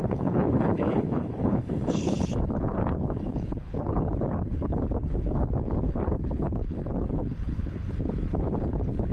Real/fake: fake